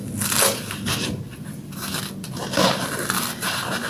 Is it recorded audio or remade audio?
recorded